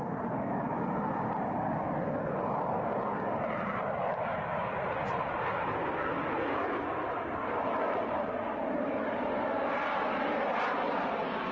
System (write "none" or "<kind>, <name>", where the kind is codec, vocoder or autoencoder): none